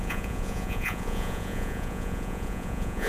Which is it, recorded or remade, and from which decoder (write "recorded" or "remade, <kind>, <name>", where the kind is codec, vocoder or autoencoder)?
remade, vocoder, Vocos